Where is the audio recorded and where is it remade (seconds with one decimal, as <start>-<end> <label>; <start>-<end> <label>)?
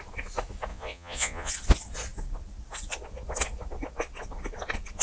0.0-0.7 recorded; 0.7-1.5 remade; 1.5-5.0 recorded